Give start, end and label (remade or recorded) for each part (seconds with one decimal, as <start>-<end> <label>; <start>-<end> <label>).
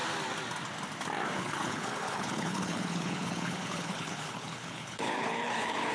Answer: 0.0-1.4 recorded; 1.4-5.9 remade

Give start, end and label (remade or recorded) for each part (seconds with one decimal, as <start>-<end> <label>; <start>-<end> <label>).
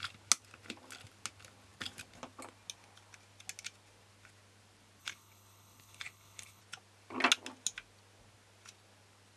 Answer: 0.0-5.0 recorded; 5.0-6.6 remade; 6.6-9.4 recorded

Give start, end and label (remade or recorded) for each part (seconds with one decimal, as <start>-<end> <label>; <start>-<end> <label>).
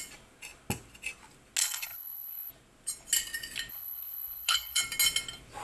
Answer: 0.0-1.6 recorded; 1.6-2.5 remade; 2.5-3.7 recorded; 3.7-4.8 remade; 4.8-5.6 recorded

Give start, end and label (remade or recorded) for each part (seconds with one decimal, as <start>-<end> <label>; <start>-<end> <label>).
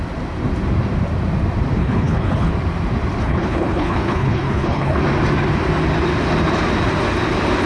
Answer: 0.0-1.8 recorded; 1.8-2.5 remade; 2.5-3.2 recorded; 3.2-5.0 remade; 5.0-7.7 recorded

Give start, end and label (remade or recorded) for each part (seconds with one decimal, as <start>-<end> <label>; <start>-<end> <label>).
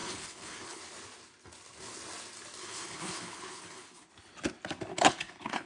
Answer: 0.0-0.8 remade; 0.8-2.6 recorded; 2.6-4.1 remade; 4.1-4.9 recorded; 4.9-5.7 remade